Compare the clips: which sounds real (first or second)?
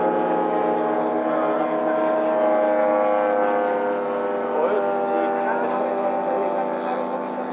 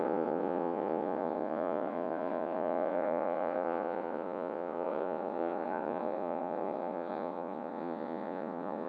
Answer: first